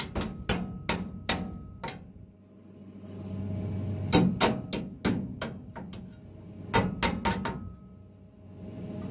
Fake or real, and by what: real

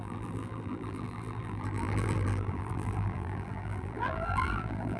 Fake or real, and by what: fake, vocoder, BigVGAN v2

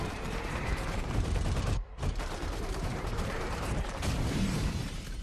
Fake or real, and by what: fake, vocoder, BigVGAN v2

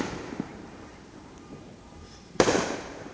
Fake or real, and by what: fake, vocoder, BigVGAN v2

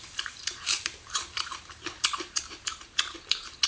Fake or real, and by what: fake, vocoder, BigVGAN v2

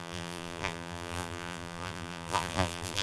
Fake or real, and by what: fake, vocoder, BigVGAN v2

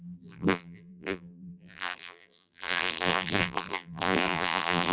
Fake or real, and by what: fake, vocoder, BigVGAN v2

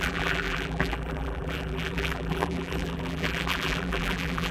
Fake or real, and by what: fake, vocoder, BigVGAN v2